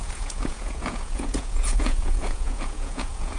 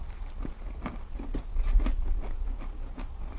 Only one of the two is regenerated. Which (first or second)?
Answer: first